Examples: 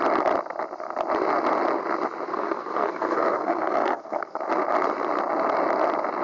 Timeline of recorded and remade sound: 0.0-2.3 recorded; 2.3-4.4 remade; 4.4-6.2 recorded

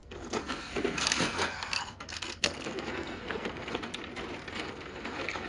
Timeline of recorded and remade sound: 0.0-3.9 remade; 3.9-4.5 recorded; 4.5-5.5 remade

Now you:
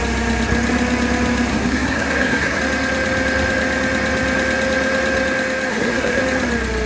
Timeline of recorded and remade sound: 0.0-1.5 recorded; 1.5-2.6 remade; 2.6-5.7 recorded; 5.7-6.2 remade; 6.2-6.9 recorded

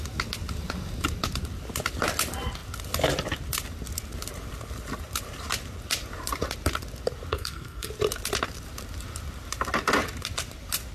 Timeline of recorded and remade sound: 0.0-7.3 recorded; 7.3-7.9 remade; 7.9-10.9 recorded

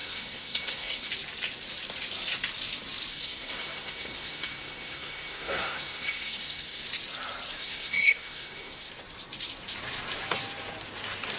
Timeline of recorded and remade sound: 0.0-1.1 remade; 1.1-3.1 recorded; 3.1-6.8 remade; 6.8-7.6 recorded; 7.6-8.9 remade; 8.9-11.4 recorded